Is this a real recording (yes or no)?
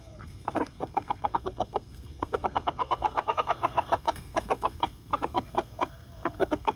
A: no